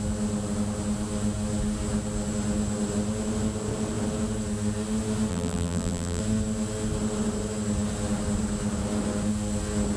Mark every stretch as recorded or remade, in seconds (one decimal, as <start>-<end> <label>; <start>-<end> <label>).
0.0-5.3 recorded; 5.3-6.2 remade; 6.2-10.0 recorded